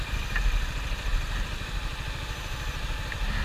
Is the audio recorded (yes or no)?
no